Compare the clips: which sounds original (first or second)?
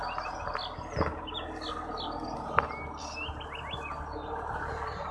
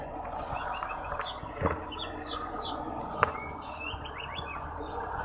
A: first